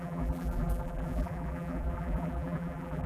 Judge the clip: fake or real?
fake